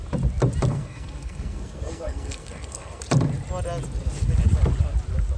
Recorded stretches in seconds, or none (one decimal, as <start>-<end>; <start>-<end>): 0.0-0.7; 3.0-5.4